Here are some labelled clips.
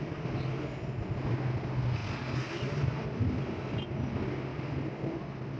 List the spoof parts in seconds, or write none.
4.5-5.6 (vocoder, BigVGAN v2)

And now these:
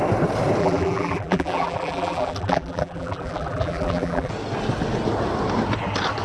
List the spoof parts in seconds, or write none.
0.6-4.3 (vocoder, BigVGAN v2)

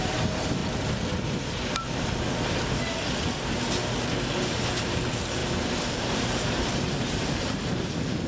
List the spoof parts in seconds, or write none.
0.0-0.6 (vocoder, BigVGAN v2); 4.8-8.3

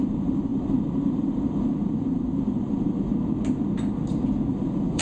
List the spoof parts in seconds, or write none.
0.0-3.1 (vocoder, BigVGAN v2); 4.5-5.0

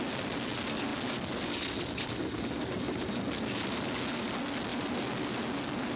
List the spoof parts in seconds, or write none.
none